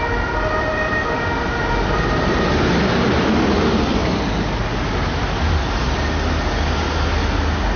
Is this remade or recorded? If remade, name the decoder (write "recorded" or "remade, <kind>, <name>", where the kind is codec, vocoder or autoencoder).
recorded